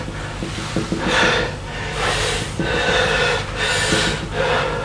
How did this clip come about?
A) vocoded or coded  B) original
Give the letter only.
B